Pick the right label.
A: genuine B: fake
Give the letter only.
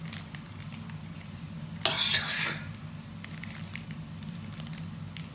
A